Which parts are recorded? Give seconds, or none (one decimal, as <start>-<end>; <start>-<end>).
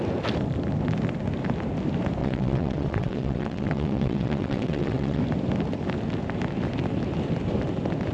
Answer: 0.0-2.2; 5.2-8.1